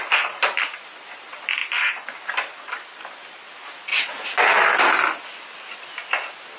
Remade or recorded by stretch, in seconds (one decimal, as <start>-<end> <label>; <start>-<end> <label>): 0.0-6.6 recorded